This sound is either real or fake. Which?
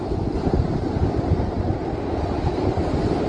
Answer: real